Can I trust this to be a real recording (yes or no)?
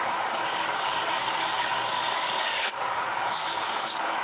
no